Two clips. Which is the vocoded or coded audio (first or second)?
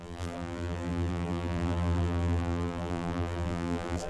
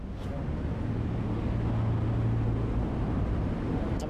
first